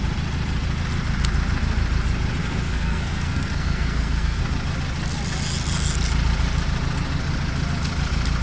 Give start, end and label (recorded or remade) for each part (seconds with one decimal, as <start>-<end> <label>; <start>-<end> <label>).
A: 0.0-2.4 recorded; 2.4-4.4 remade; 4.4-8.4 recorded